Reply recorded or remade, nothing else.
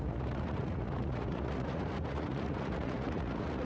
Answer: remade